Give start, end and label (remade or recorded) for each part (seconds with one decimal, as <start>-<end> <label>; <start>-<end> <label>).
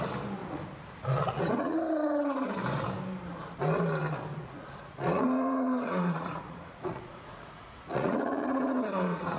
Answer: 0.0-0.4 recorded; 0.4-1.8 remade; 1.8-4.3 recorded; 4.3-9.4 remade